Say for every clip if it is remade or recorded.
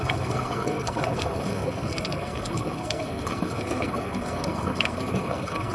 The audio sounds remade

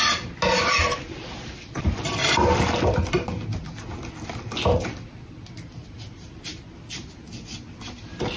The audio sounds recorded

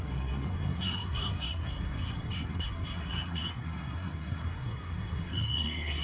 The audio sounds remade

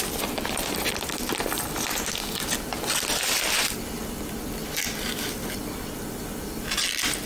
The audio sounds recorded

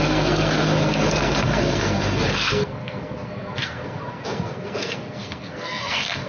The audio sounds remade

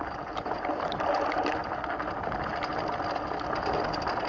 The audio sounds recorded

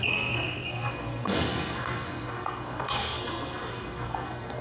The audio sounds remade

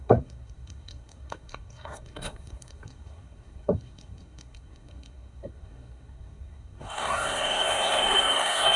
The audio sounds remade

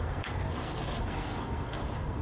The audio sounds remade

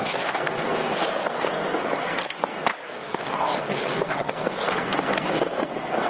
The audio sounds remade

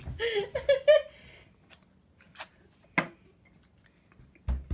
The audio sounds recorded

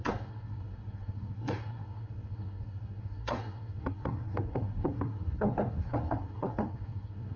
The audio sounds remade